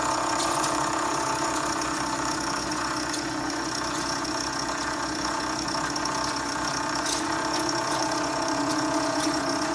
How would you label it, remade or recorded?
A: remade